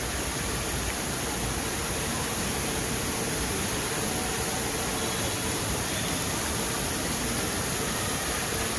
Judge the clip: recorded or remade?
remade